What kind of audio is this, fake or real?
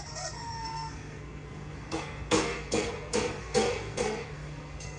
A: fake